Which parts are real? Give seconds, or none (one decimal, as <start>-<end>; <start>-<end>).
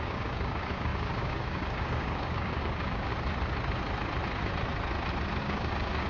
3.1-5.4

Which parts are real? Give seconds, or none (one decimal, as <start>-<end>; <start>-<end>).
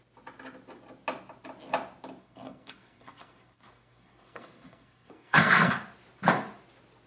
0.0-2.2; 5.7-7.1